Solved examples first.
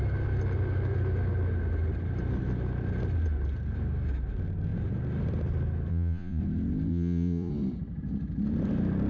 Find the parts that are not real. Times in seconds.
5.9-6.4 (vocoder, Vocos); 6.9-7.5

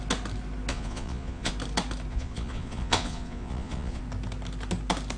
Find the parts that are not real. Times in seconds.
0.7-1.5 (vocoder, Vocos); 2.1-4.0

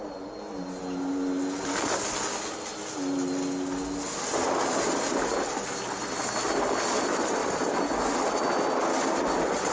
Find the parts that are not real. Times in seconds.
none

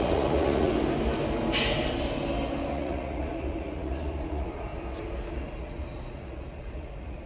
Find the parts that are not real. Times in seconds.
0.0-0.7 (vocoder, Vocos); 2.7-4.7; 5.6-7.3

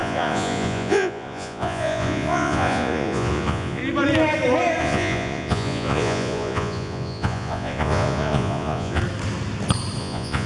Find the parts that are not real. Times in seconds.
0.0-3.8 (vocoder, Vocos); 4.8-9.0; 10.0-10.5

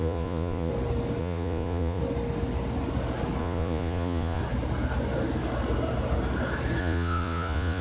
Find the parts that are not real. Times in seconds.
0.0-0.7 (vocoder, Vocos); 1.2-2.0; 3.4-4.4; 6.8-7.8

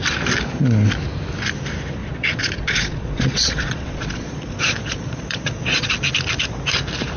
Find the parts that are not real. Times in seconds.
2.0-5.9 (vocoder, Vocos)